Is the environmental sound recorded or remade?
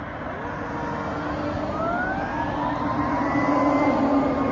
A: recorded